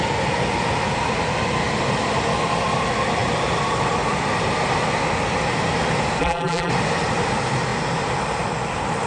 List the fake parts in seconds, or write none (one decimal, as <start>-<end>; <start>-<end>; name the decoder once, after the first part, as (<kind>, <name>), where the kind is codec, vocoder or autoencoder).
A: 6.2-6.7 (vocoder, BigVGAN v2)